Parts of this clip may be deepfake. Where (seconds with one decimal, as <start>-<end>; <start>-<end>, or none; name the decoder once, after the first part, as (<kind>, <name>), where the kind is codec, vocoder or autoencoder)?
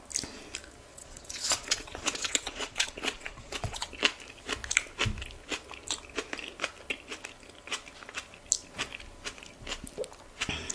0.9-3.9 (vocoder, Vocos)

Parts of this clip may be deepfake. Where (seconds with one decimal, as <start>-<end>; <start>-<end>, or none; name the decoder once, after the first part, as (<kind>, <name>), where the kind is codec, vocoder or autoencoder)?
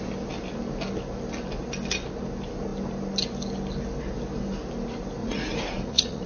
5.2-6.3 (vocoder, Vocos)